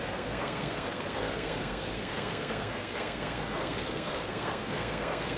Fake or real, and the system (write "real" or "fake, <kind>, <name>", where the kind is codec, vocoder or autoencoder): fake, codec, SNAC